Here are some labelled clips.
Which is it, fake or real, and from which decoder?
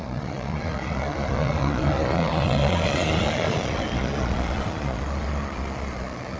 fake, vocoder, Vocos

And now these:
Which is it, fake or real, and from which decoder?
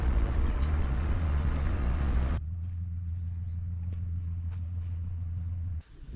fake, vocoder, Vocos